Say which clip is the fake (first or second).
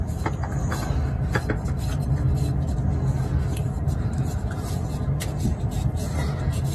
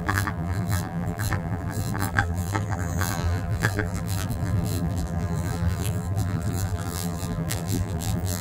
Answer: second